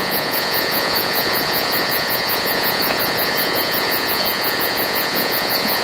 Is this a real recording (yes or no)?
no